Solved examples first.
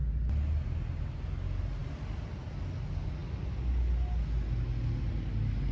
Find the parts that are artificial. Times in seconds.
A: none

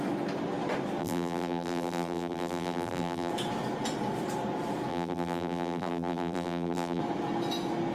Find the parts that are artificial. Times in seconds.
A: 1.0-3.3 (vocoder, BigVGAN v2); 4.9-7.0

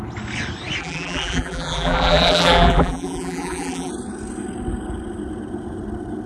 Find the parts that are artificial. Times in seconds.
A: 0.8-3.9 (vocoder, BigVGAN v2)

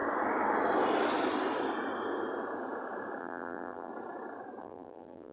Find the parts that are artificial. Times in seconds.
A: 3.2-3.9 (vocoder, BigVGAN v2); 4.6-5.3

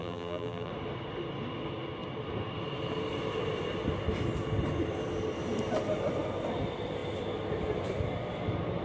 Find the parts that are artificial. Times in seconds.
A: 0.0-0.7 (vocoder, BigVGAN v2)

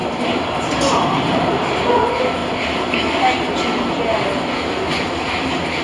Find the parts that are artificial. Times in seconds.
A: 0.0-1.5 (vocoder, BigVGAN v2); 2.4-4.4

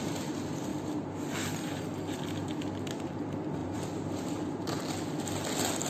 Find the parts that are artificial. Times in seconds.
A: 3.6-4.8 (vocoder, BigVGAN v2)

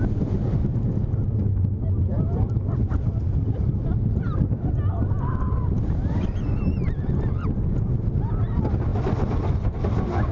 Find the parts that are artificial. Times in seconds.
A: 6.0-6.6 (vocoder, BigVGAN v2)